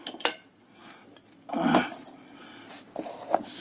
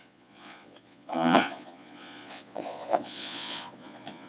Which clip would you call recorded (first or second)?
first